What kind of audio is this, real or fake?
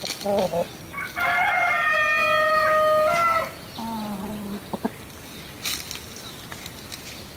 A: real